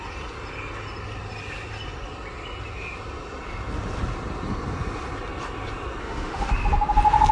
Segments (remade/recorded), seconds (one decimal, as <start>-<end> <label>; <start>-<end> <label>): 0.0-6.0 recorded; 6.0-6.5 remade; 6.5-7.3 recorded